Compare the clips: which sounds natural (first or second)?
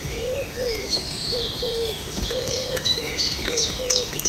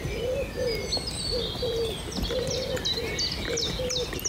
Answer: second